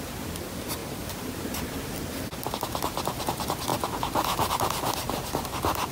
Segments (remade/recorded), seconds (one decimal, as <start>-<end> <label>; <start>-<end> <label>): 0.0-5.9 recorded